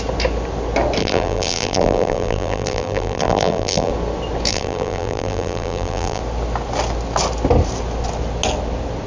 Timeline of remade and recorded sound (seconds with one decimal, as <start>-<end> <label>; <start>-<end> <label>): 0.0-1.0 recorded; 1.0-3.9 remade; 3.9-4.5 recorded; 4.5-6.2 remade; 6.2-9.1 recorded

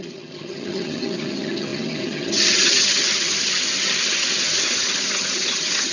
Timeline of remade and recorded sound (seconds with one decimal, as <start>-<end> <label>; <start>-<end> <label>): 0.0-5.9 remade

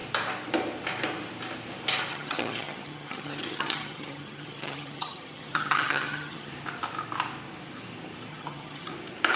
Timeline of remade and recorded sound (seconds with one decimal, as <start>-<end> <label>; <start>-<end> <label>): 0.0-2.1 recorded; 2.1-6.5 remade; 6.5-8.3 recorded; 8.3-8.9 remade; 8.9-9.4 recorded

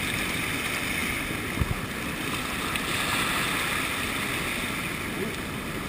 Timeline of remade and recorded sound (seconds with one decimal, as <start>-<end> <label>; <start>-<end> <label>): 0.0-5.9 recorded

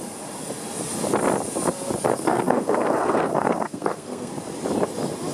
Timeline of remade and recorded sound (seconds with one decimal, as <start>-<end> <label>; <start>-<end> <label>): 0.0-2.1 recorded; 2.1-4.3 remade; 4.3-5.3 recorded

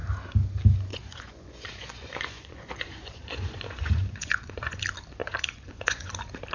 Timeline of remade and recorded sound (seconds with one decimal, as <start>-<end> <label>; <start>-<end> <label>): 0.0-0.9 recorded; 0.9-4.8 remade; 4.8-5.2 recorded; 5.2-6.1 remade; 6.1-6.5 recorded

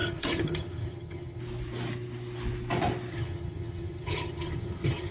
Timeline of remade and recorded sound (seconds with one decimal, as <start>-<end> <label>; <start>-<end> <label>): 0.0-1.4 remade; 1.4-3.1 recorded; 3.1-5.1 remade